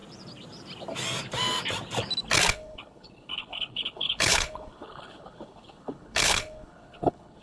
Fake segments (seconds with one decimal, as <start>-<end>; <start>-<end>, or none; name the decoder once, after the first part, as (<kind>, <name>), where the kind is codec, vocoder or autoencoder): 2.5-7.4 (codec, HILCodec)